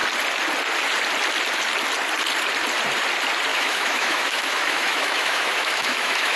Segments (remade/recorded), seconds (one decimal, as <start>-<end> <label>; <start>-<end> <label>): 0.0-3.5 recorded; 3.5-6.4 remade